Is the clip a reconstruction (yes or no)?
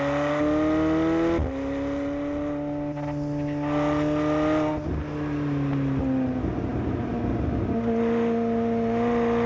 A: no